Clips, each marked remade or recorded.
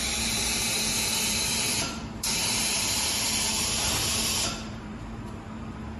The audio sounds remade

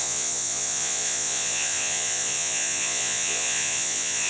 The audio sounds remade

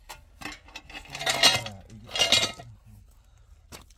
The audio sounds recorded